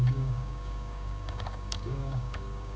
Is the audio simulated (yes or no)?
yes